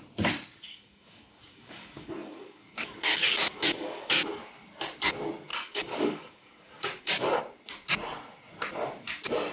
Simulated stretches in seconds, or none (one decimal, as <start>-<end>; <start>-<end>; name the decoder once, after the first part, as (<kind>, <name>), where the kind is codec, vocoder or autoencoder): 0.7-4.1 (codec, DAC); 5.5-7.4